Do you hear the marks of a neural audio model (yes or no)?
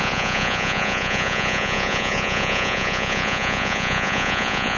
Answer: yes